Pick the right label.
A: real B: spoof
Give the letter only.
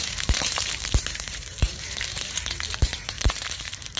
B